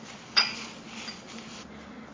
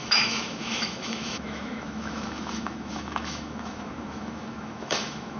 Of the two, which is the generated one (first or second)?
second